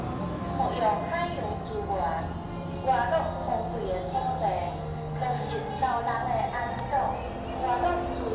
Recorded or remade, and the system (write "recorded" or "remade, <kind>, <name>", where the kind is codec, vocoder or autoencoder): recorded